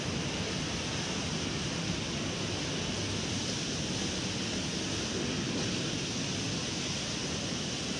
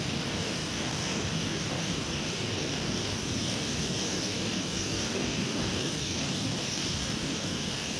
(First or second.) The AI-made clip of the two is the second